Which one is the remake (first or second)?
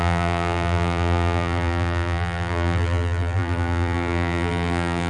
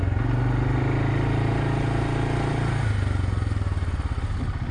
first